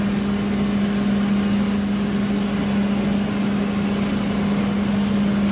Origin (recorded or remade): recorded